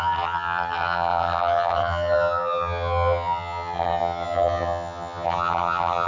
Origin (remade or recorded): remade